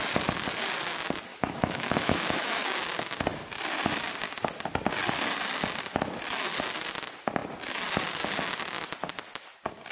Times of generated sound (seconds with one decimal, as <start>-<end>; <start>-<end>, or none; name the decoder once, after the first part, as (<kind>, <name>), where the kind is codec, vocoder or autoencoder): 1.3-2.8 (autoencoder, DAC-VAE)